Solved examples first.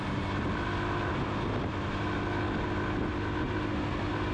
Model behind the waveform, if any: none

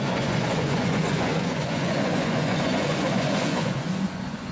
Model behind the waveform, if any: vocoder, Vocos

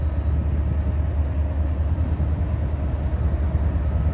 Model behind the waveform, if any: none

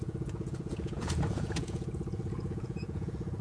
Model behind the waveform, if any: vocoder, Vocos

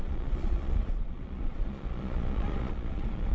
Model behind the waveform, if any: vocoder, Vocos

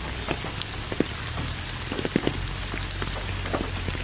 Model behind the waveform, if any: none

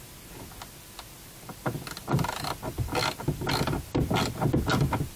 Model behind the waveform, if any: none